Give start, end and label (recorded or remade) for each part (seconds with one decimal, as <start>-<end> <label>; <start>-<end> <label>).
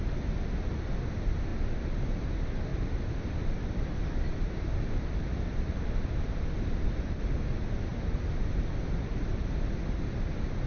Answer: 0.0-2.7 recorded; 2.7-7.5 remade; 7.5-7.9 recorded; 7.9-10.7 remade